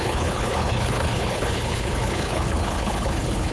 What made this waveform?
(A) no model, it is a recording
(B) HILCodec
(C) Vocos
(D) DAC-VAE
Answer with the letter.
B